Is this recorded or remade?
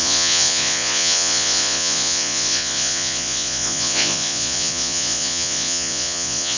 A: remade